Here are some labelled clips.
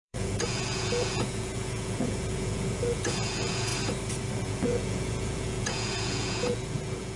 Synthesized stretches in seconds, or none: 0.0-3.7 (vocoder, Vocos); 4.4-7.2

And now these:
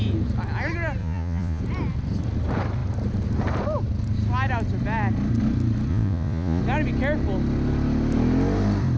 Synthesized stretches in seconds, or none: 1.0-1.6 (vocoder, Vocos); 5.9-6.6